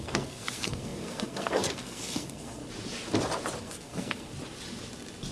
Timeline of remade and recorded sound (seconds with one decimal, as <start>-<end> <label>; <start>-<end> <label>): 0.0-2.6 remade; 2.6-3.6 recorded; 3.6-4.3 remade; 4.3-5.3 recorded